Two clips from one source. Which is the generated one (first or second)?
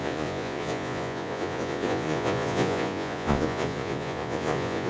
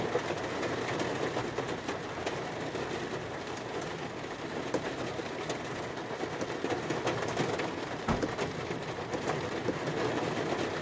first